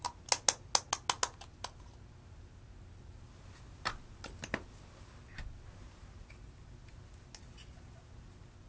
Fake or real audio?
real